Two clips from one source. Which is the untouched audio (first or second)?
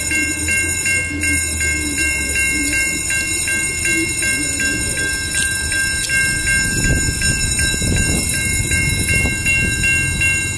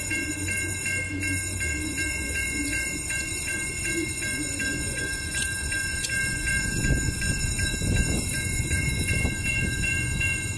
first